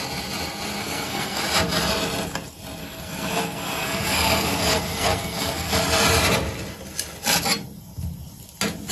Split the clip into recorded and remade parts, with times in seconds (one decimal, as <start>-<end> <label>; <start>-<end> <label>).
0.0-0.8 recorded; 0.8-1.4 remade; 1.4-2.8 recorded; 2.8-5.7 remade; 5.7-8.9 recorded